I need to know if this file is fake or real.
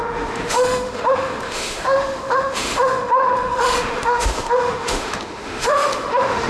fake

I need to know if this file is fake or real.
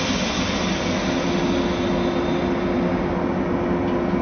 real